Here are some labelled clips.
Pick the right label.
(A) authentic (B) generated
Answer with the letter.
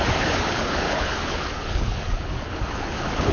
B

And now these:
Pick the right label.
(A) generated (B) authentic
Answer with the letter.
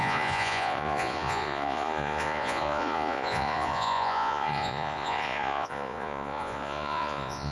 A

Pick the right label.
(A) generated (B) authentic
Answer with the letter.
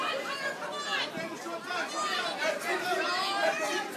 B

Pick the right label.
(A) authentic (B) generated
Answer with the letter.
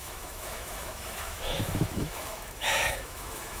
B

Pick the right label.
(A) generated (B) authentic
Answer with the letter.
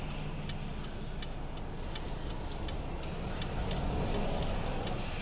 B